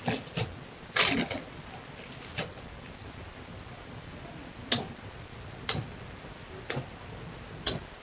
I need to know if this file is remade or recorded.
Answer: recorded